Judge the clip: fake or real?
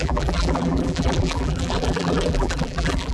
fake